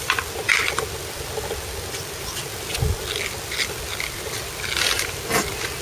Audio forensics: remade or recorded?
recorded